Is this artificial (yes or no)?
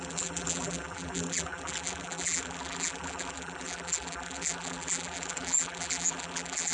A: yes